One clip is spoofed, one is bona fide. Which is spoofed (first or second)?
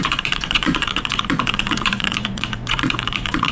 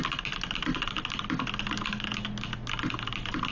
first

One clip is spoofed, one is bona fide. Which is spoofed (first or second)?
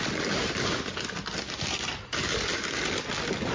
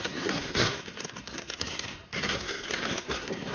second